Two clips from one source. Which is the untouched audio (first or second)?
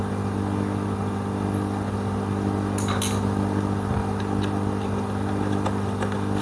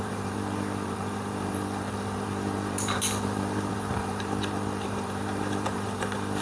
first